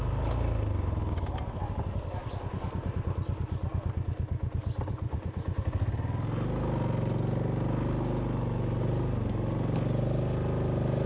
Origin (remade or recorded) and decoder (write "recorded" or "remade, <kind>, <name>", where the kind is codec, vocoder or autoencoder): recorded